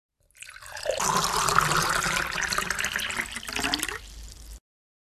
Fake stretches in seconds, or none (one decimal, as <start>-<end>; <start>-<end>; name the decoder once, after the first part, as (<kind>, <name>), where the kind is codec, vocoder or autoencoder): 0.7-2.7 (vocoder, BigVGAN v2)